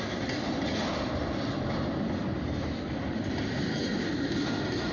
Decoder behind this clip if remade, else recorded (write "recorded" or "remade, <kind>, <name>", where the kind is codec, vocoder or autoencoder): recorded